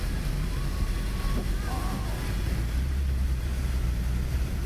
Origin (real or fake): fake